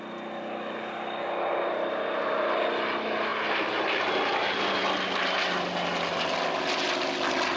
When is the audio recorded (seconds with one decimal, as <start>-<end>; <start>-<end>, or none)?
0.0-7.6